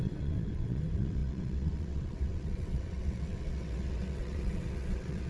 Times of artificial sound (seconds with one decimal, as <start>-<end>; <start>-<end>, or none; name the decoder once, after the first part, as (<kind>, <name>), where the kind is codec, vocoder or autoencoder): 0.0-5.3 (vocoder, WaveNeXt)